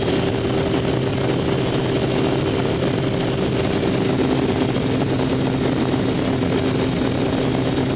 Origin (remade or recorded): recorded